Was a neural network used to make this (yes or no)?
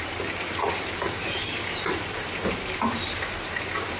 no